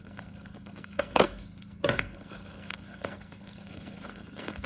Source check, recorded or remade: remade